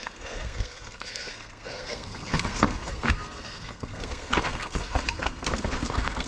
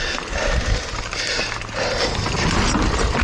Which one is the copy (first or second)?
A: first